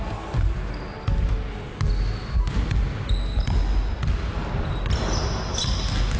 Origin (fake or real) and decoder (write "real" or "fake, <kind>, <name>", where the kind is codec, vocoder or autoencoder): real